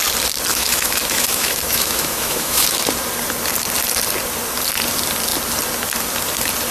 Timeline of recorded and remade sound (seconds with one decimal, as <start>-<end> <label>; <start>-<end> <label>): 0.0-0.5 recorded; 0.5-2.9 remade; 2.9-6.7 recorded